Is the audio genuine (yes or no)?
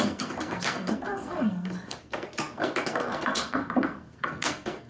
no